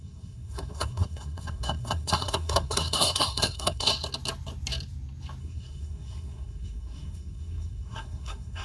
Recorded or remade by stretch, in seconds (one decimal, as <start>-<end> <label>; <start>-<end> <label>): 0.0-3.9 remade; 3.9-5.4 recorded; 5.4-8.6 remade